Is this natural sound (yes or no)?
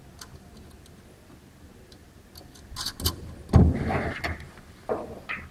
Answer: yes